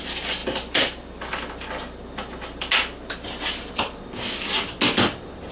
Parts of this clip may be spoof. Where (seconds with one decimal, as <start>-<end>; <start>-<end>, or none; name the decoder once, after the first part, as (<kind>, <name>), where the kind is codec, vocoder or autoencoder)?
none